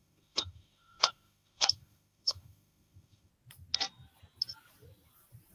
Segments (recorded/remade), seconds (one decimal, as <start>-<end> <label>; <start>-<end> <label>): 0.0-3.3 remade; 3.3-5.5 recorded